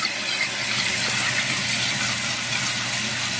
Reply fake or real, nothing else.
real